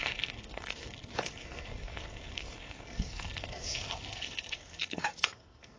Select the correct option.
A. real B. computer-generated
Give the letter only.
B